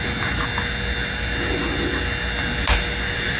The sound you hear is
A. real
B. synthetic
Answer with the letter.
A